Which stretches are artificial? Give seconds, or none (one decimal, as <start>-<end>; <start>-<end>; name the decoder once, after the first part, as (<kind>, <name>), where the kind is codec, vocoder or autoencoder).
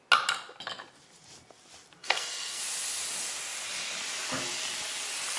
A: 2.0-2.6 (codec, SNAC)